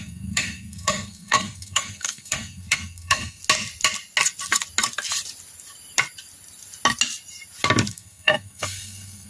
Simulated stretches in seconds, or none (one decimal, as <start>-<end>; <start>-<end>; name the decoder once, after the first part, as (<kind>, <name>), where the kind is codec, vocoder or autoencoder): 0.0-3.4 (codec, SNAC); 7.9-9.3